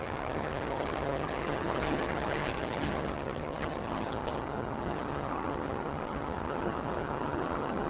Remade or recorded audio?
remade